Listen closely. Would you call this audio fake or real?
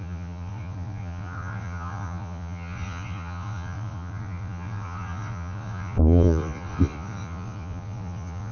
fake